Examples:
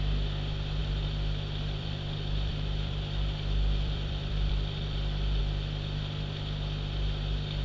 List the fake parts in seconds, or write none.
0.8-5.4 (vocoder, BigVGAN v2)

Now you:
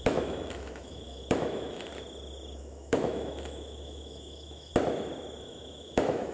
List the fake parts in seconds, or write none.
0.0-1.9 (autoencoder, DAC-VAE); 2.6-4.7; 5.4-6.3

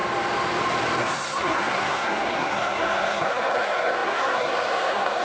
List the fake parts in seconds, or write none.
1.0-5.2 (codec, SNAC)